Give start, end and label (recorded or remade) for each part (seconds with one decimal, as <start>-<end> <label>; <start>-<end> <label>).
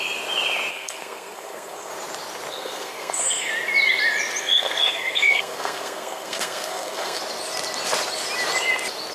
0.0-0.7 recorded; 0.7-1.9 remade; 1.9-2.5 recorded; 2.5-3.5 remade; 3.5-4.4 recorded; 4.4-7.2 remade; 7.2-9.1 recorded